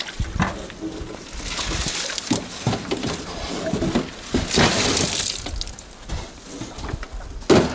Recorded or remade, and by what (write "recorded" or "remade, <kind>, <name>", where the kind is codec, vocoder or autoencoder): recorded